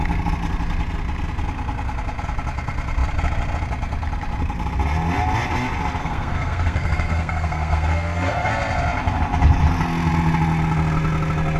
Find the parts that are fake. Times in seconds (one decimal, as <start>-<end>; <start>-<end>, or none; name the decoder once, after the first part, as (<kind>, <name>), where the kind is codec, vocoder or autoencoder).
6.0-8.5 (codec, SNAC)